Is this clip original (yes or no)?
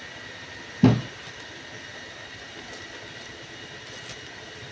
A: yes